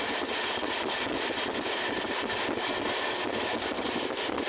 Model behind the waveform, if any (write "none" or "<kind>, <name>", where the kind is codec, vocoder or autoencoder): none